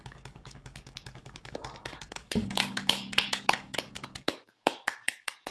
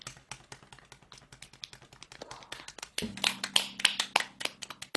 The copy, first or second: first